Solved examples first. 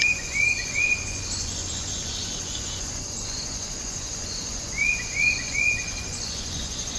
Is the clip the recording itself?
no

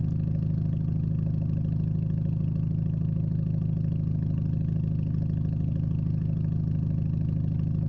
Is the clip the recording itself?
yes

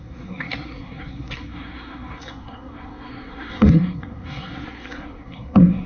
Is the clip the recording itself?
no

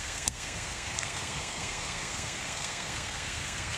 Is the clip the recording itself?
no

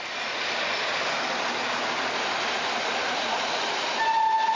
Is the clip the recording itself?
yes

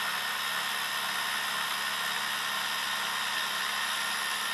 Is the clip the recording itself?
yes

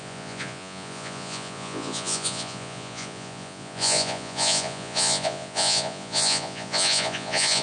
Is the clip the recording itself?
no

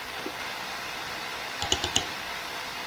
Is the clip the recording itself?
no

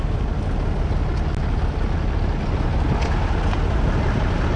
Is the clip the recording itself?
yes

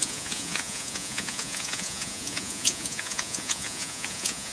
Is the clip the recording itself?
no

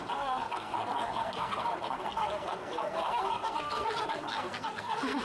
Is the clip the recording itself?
no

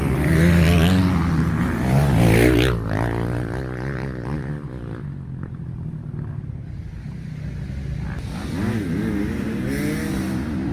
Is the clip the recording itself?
yes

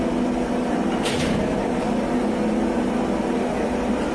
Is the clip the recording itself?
yes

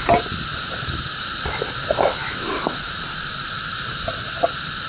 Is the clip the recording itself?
yes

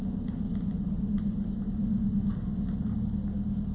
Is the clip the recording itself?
yes